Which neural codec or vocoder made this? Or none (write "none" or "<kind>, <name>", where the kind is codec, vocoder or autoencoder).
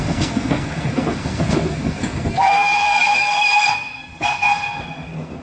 codec, SNAC